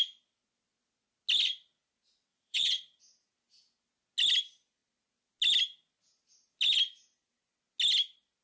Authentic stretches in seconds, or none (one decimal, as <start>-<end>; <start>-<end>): 0.0-2.3; 3.0-8.4